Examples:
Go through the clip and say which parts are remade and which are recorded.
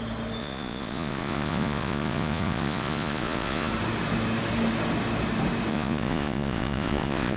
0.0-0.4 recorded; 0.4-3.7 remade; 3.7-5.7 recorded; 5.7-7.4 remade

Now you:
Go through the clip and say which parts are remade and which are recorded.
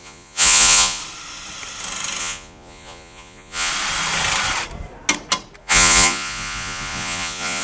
0.0-1.0 remade; 1.0-2.2 recorded; 2.2-3.7 remade; 3.7-5.6 recorded; 5.6-7.6 remade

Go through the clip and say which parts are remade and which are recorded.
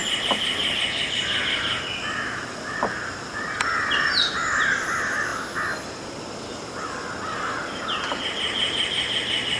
0.0-9.6 recorded